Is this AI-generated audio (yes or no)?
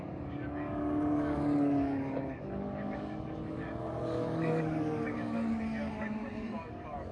yes